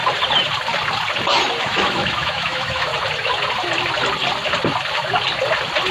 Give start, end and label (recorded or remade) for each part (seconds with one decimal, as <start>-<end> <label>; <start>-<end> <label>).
0.0-1.6 recorded; 1.6-2.9 remade; 2.9-5.9 recorded